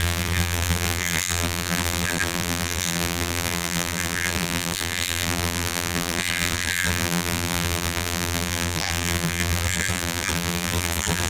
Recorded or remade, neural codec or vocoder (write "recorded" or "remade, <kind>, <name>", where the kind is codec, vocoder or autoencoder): remade, vocoder, BigVGAN v2